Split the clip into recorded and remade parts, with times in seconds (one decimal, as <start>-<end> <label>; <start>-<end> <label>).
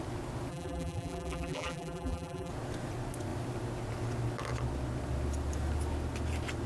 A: 0.0-0.5 recorded; 0.5-2.5 remade; 2.5-6.7 recorded